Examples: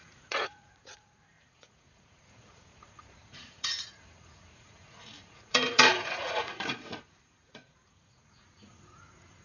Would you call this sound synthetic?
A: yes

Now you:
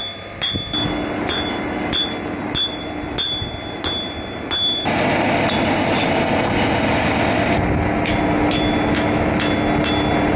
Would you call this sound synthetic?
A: no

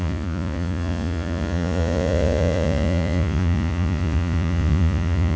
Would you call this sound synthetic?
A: yes